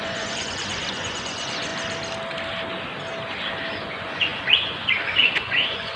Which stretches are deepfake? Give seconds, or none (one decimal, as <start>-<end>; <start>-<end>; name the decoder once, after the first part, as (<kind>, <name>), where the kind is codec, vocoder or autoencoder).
0.0-1.7 (vocoder, Vocos); 3.7-6.0